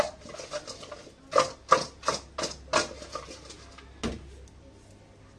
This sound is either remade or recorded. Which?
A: recorded